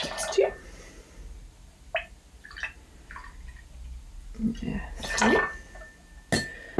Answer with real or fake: real